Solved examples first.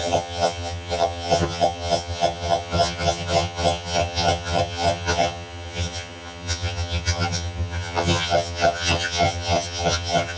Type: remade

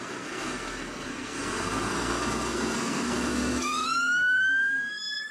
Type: remade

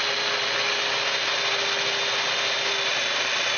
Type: recorded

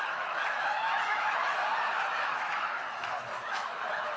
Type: remade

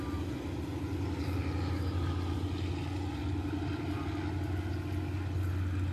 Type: recorded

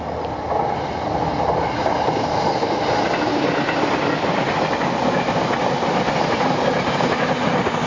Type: recorded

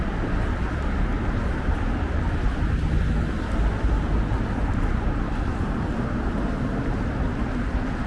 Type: recorded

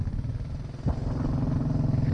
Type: recorded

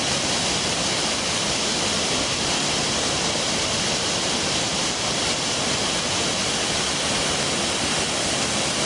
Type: recorded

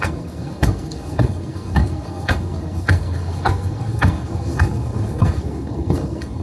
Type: remade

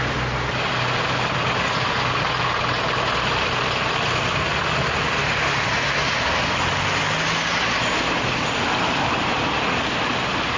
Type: recorded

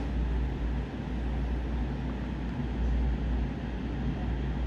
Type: recorded